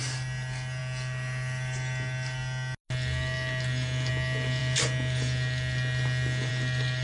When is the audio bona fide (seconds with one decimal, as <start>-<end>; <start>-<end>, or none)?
0.0-7.0